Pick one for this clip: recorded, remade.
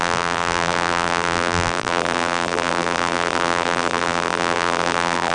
remade